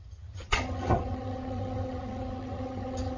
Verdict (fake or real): fake